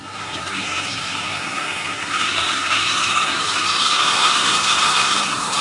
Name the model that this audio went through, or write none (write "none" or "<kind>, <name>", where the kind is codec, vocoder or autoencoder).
codec, SNAC